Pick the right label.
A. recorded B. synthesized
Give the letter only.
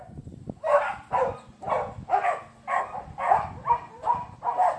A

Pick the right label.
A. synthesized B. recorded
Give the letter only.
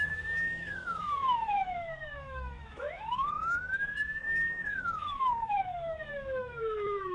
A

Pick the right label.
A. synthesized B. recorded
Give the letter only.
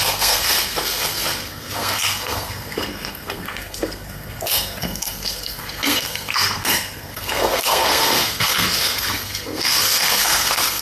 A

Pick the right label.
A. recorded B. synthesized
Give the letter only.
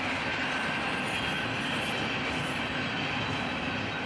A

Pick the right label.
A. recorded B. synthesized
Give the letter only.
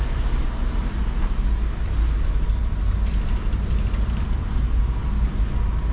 A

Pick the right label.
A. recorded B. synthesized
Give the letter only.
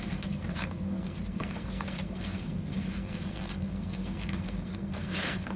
B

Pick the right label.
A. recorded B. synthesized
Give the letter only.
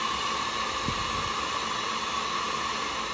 A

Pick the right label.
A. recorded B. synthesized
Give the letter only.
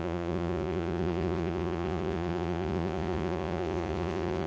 B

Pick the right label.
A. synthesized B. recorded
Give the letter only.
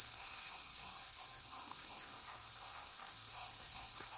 A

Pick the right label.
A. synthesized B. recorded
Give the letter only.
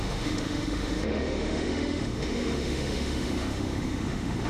A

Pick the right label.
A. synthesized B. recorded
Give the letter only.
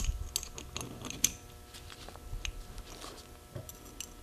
B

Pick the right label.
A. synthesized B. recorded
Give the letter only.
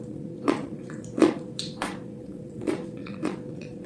A